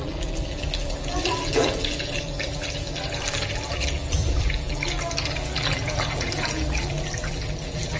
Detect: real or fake fake